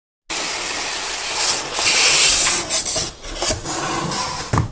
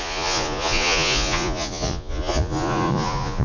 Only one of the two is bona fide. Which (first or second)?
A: first